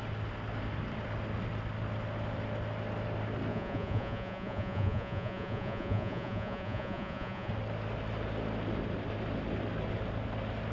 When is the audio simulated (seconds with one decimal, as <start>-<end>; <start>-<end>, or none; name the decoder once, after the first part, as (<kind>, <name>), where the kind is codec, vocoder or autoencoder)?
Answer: 3.5-7.5 (vocoder, Vocos)